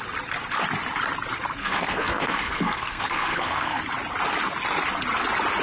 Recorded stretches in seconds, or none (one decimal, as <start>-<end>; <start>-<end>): 0.0-1.6; 3.8-5.6